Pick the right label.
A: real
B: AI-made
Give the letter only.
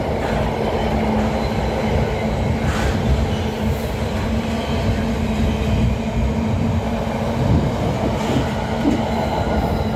A